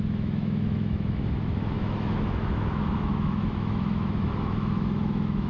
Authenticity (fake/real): fake